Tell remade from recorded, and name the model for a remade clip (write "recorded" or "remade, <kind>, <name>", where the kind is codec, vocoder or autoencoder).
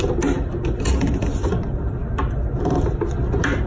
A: recorded